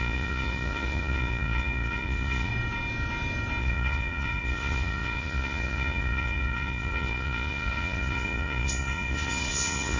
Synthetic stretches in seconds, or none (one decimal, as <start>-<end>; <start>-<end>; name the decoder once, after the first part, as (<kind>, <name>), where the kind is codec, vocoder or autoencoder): 0.0-2.5 (vocoder, Vocos); 3.6-10.0